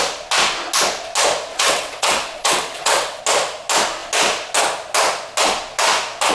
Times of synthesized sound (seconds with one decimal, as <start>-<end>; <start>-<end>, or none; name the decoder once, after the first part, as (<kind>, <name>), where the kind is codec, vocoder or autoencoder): 1.5-3.2 (vocoder, WaveNeXt)